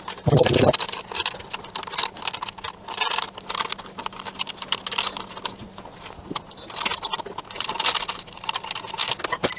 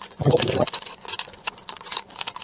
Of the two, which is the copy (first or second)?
second